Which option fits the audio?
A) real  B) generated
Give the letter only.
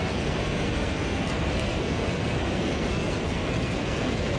B